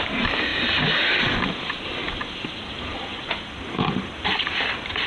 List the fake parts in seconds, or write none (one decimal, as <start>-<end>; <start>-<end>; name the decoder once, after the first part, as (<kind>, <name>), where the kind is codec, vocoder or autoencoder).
2.0-3.6 (vocoder, BigVGAN v2)